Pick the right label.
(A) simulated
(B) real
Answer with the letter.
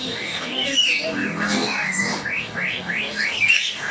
A